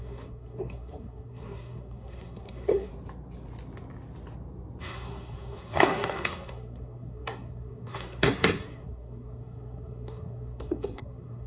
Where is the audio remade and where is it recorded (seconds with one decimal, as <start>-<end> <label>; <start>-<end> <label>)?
0.0-2.9 remade; 2.9-4.8 recorded; 4.8-11.5 remade